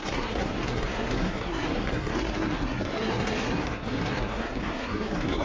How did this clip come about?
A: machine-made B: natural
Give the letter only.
A